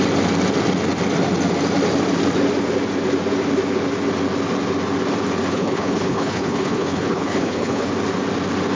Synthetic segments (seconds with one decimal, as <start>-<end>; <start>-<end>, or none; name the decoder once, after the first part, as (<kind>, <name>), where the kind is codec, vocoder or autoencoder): 5.5-7.9 (codec, HILCodec)